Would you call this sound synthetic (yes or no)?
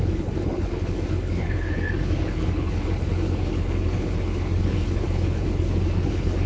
yes